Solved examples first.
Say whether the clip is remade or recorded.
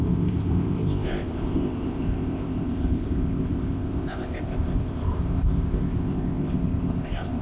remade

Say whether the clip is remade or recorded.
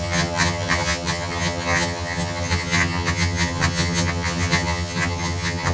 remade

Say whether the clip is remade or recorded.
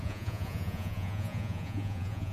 remade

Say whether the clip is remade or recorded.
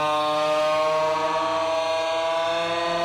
recorded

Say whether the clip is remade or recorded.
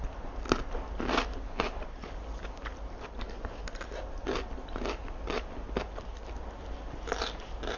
recorded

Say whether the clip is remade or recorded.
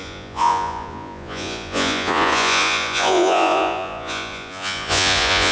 remade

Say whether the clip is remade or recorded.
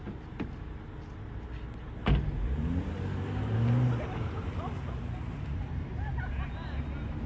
recorded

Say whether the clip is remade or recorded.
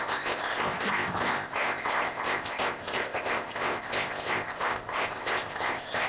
remade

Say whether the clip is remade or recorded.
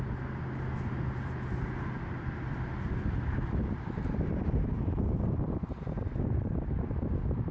recorded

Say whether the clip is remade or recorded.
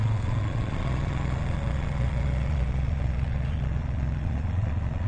remade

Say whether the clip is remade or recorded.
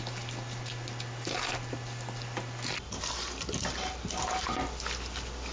recorded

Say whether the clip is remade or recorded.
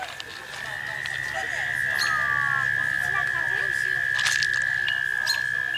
recorded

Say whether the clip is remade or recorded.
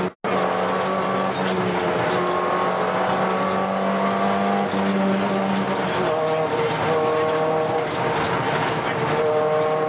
recorded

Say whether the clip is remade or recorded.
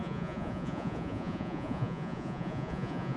remade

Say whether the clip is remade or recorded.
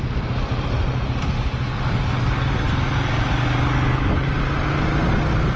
recorded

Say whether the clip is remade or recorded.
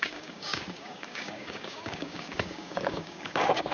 remade